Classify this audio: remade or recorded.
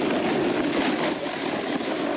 recorded